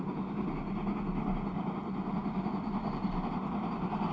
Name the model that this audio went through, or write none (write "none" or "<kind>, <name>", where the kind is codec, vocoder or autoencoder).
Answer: none